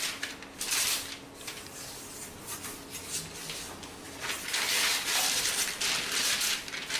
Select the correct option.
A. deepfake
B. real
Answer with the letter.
B